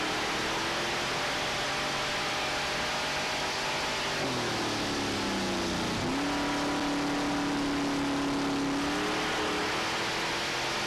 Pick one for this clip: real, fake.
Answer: real